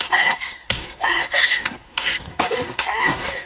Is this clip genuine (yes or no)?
no